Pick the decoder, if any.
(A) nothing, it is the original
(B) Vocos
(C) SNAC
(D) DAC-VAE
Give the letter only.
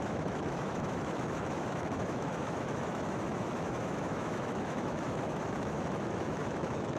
D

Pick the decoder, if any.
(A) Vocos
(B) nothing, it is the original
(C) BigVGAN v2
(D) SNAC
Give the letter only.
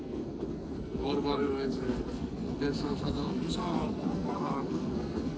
D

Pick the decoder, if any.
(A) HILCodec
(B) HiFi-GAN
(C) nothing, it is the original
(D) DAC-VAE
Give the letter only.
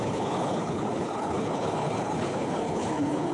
A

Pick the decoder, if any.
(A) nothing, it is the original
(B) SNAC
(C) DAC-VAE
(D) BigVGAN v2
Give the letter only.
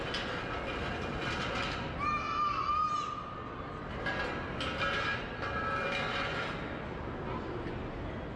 A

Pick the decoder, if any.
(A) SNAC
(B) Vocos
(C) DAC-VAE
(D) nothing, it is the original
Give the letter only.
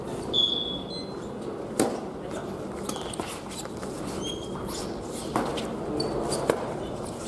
D